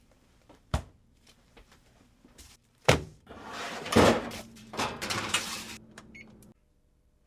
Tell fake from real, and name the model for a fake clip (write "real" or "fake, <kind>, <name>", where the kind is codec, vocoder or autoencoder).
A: fake, vocoder, BigVGAN v2